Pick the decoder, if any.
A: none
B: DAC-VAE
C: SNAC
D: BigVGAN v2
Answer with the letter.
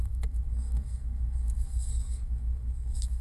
C